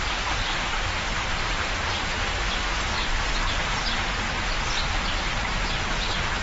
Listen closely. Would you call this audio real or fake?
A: fake